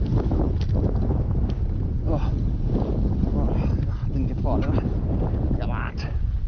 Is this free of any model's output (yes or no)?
yes